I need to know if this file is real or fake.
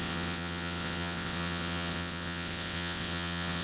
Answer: fake